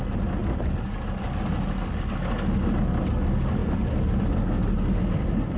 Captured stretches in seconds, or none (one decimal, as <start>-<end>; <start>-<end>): 0.0-5.6